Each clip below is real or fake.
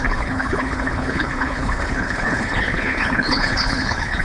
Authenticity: fake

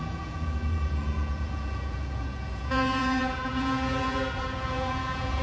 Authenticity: fake